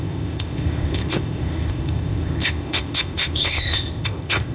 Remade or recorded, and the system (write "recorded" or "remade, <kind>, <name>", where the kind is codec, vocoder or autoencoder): remade, codec, ZipCodec